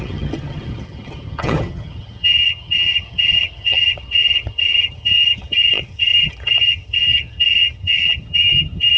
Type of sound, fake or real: fake